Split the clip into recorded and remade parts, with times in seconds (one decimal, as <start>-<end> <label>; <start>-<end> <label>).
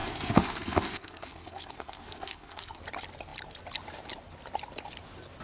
0.0-2.8 remade; 2.8-5.4 recorded